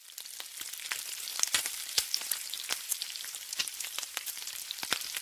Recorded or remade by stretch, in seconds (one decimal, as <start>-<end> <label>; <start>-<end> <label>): 0.0-1.3 recorded; 1.3-4.4 remade; 4.4-5.2 recorded